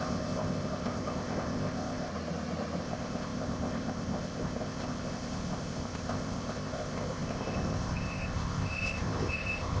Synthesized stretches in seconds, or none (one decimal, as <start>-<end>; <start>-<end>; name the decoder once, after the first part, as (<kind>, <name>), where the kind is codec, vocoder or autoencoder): 0.0-2.1 (codec, ZipCodec); 2.8-9.8